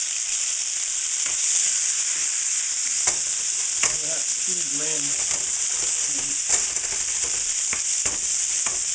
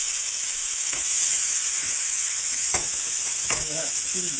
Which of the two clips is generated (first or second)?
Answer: second